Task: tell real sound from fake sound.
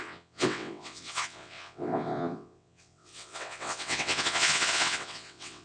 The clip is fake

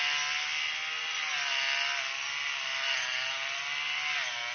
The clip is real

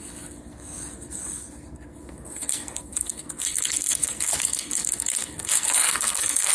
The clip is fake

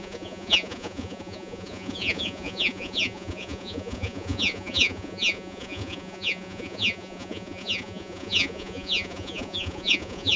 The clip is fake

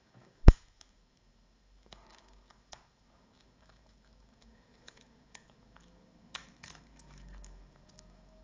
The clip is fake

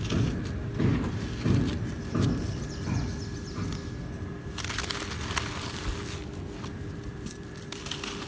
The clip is real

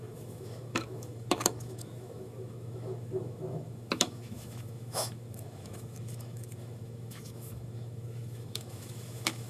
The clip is fake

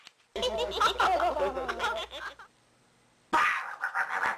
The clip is real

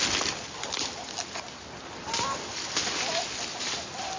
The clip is real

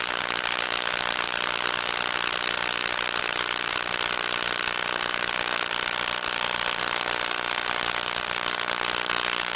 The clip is real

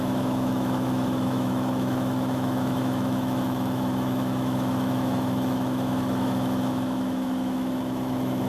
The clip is fake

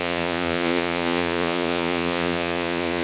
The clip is fake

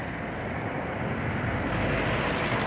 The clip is real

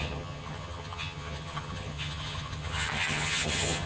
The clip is fake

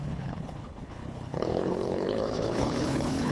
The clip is fake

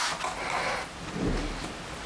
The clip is real